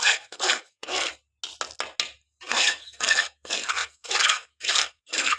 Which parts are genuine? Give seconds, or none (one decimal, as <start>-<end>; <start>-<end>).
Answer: 1.1-2.5